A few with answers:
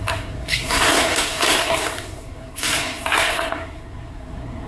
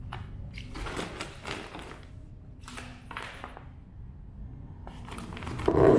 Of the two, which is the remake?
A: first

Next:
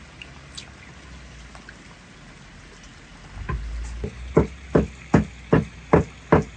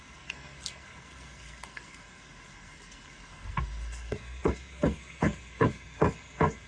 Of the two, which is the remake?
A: second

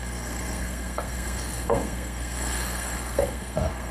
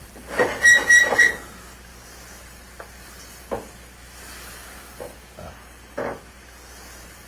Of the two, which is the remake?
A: first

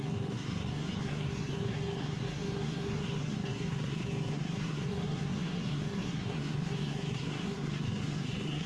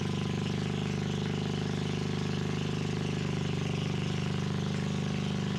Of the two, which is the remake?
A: first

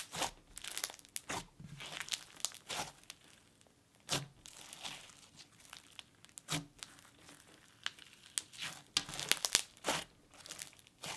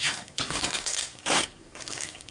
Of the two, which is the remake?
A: second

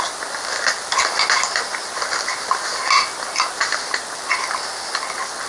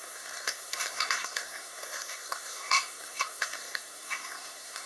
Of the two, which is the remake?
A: second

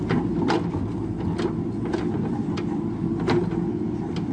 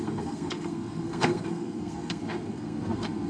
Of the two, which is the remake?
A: second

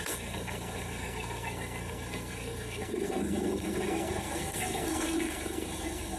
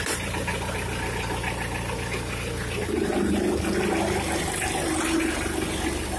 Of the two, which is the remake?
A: first